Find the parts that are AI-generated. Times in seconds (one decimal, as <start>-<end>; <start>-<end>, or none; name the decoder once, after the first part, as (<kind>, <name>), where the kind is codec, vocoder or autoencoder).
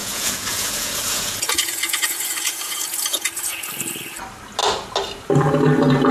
0.0-3.7 (vocoder, Vocos)